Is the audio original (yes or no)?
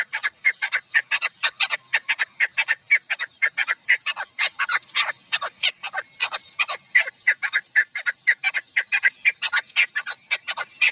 yes